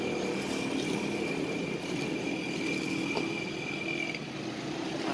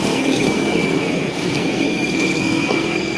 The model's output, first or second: second